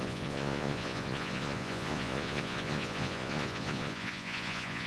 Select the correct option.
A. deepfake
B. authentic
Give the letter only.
A